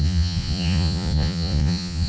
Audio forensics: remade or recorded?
remade